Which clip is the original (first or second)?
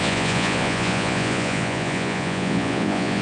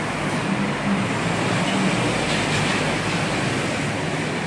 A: second